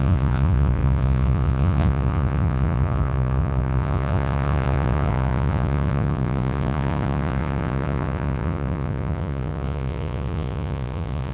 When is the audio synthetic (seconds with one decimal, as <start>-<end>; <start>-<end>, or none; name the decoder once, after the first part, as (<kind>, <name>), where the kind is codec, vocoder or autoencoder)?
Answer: 0.0-11.3 (vocoder, Vocos)